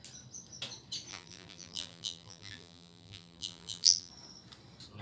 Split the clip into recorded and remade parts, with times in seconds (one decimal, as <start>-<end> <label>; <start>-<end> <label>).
0.0-1.1 recorded; 1.1-4.1 remade; 4.1-5.0 recorded